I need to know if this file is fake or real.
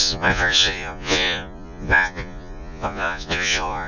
fake